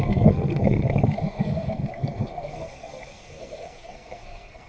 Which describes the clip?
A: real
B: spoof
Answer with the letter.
B